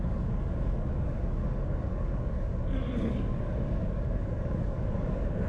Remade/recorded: remade